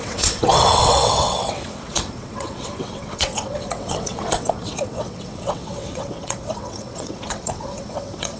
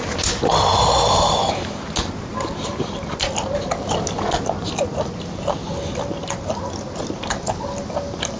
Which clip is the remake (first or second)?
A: first